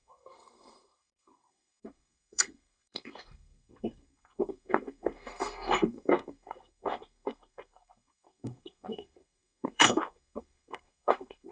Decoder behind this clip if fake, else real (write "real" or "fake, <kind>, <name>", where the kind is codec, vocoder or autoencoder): fake, codec, SNAC